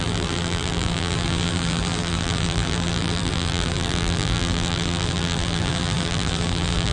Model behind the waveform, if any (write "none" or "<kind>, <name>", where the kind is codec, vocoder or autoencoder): vocoder, BigVGAN v2